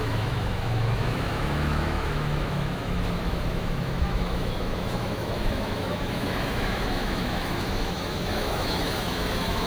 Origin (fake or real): fake